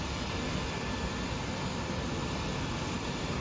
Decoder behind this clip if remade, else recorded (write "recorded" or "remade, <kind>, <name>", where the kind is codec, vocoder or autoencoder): recorded